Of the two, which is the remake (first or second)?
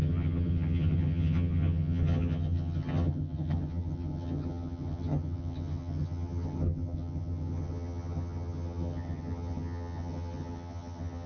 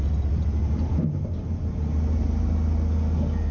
first